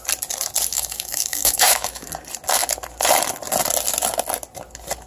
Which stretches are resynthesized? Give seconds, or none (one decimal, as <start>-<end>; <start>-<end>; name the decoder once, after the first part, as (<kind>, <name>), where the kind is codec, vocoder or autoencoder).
0.7-2.1 (autoencoder, DAC-VAE)